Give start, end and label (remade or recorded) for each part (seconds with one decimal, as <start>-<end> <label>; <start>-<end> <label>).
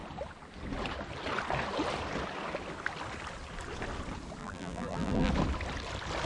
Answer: 0.0-4.4 recorded; 4.4-5.3 remade; 5.3-6.3 recorded